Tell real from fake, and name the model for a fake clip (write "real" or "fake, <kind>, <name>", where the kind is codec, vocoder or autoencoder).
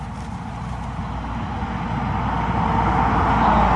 real